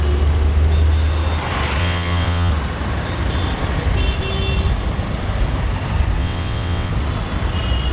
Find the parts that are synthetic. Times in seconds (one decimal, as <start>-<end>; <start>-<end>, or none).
1.8-2.5; 6.2-6.9